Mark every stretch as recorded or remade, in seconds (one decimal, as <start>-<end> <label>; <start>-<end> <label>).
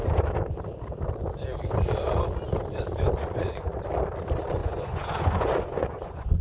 0.0-3.2 recorded; 3.2-3.7 remade; 3.7-4.6 recorded; 4.6-6.4 remade